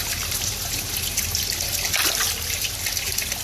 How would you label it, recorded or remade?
recorded